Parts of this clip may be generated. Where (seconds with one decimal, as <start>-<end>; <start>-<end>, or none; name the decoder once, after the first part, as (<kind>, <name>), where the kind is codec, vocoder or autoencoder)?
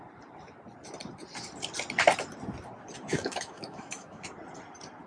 3.1-4.2 (autoencoder, DAC-VAE)